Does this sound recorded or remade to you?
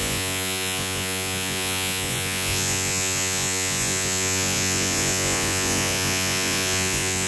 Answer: remade